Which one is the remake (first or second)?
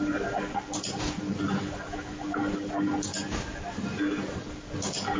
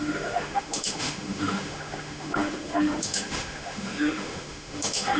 second